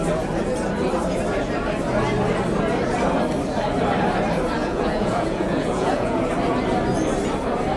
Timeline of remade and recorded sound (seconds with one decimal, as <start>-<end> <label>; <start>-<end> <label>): 0.0-4.6 recorded; 4.6-6.2 remade; 6.2-7.8 recorded